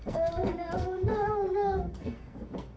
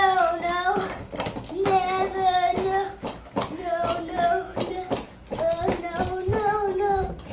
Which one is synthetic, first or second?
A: first